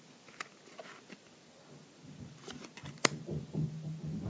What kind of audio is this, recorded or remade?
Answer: recorded